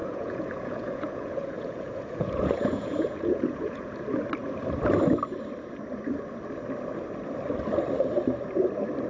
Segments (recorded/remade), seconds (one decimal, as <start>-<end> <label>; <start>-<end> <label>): 0.0-3.9 remade; 3.9-9.1 recorded